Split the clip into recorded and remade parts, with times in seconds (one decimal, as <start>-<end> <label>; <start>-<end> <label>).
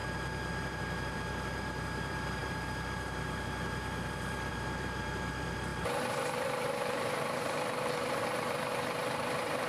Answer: 0.0-0.7 recorded; 0.7-9.7 remade